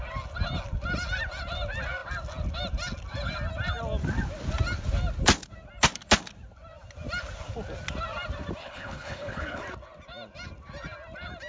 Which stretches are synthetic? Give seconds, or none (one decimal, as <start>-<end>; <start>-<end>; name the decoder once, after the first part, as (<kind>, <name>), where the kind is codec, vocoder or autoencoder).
8.6-9.6 (codec, HILCodec)